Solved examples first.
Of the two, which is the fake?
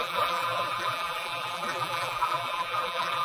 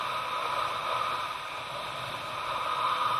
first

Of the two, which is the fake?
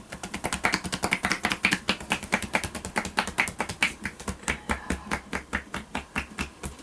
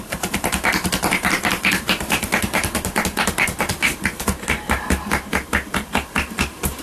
second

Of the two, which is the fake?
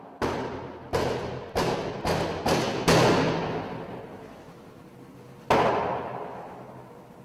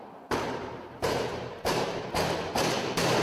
second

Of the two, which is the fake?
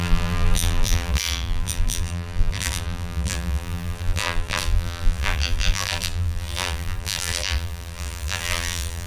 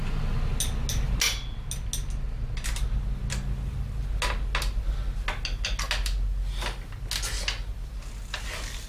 first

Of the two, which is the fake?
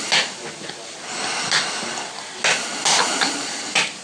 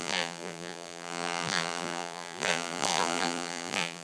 second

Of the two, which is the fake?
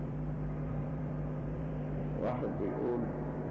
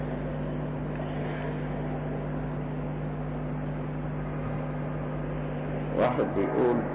first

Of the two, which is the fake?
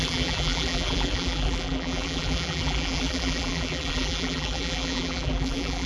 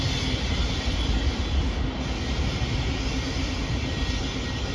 first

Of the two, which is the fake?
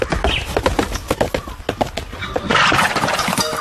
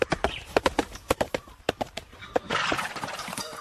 second